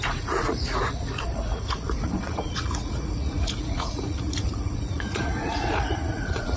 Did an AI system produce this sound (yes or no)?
yes